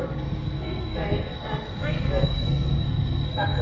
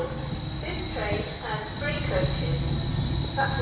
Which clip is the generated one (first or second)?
first